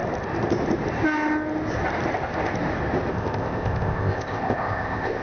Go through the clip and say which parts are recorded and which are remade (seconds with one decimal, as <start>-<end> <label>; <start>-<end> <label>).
0.0-3.1 recorded; 3.1-5.2 remade